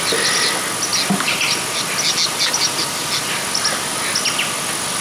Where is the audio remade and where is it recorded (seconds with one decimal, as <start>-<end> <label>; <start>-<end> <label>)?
0.0-5.0 recorded